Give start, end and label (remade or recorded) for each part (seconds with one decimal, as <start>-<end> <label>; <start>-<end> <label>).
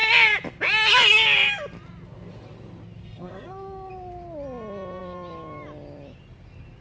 0.0-3.0 recorded; 3.0-3.9 remade; 3.9-6.8 recorded